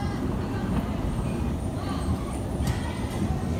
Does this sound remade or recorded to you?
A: recorded